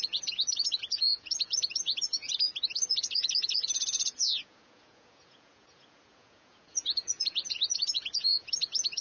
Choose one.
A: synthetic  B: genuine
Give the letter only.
A